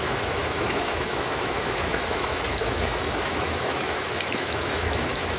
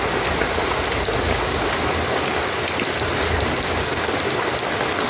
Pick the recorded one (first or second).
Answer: second